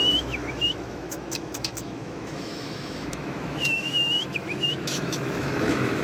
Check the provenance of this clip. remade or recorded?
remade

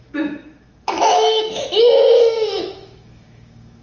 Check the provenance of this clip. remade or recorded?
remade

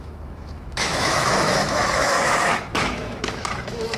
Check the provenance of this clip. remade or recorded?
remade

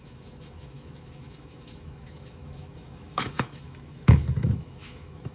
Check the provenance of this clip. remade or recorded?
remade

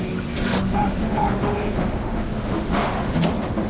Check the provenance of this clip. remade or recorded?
remade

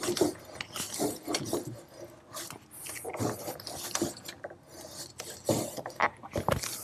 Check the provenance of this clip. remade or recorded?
recorded